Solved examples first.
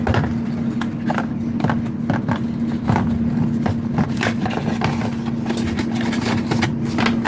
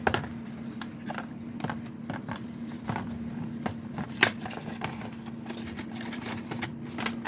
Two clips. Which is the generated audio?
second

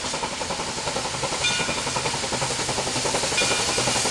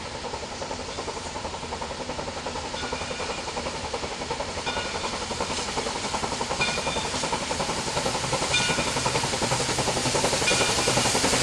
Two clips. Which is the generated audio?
second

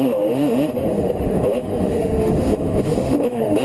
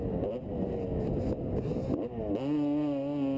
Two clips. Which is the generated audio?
first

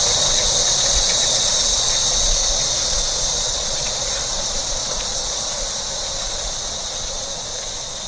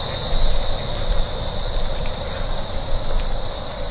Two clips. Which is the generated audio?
first